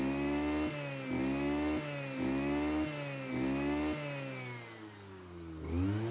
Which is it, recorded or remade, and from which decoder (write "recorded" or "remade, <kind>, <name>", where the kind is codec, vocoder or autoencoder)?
recorded